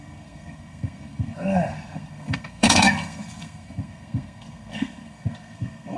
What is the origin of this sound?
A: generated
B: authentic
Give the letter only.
A